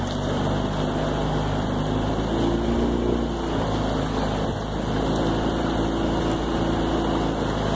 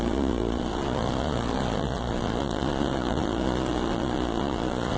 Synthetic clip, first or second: second